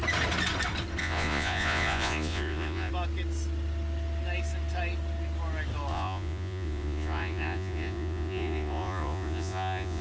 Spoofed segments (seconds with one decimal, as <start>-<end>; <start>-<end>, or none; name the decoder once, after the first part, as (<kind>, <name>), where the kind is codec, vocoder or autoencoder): 1.0-2.9 (vocoder, Vocos); 5.9-10.0